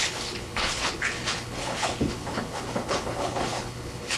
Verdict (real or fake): fake